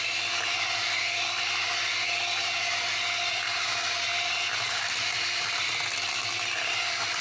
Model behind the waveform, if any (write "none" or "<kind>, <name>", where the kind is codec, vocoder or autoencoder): none